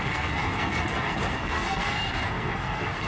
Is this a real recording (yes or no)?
no